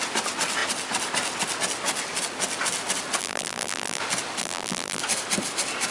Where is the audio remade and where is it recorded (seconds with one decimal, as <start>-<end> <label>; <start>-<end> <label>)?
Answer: 0.0-3.2 recorded; 3.2-4.0 remade; 4.0-4.4 recorded; 4.4-5.0 remade; 5.0-5.9 recorded